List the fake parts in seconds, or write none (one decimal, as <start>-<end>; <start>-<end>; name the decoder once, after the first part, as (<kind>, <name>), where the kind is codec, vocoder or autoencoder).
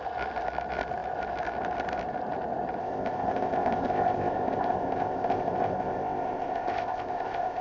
2.8-7.6 (codec, ZipCodec)